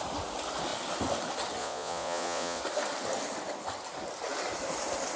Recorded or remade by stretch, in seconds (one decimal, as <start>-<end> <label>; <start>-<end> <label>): 0.0-1.6 recorded; 1.6-2.6 remade; 2.6-5.2 recorded